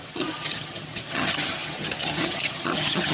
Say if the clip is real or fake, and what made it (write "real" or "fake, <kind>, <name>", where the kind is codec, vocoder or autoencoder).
fake, vocoder, HiFi-GAN